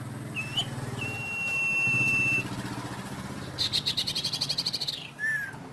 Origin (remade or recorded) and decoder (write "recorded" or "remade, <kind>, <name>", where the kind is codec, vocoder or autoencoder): recorded